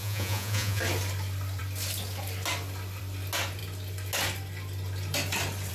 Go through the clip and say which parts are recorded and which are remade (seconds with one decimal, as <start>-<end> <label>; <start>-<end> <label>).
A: 0.0-0.8 remade; 0.8-5.7 recorded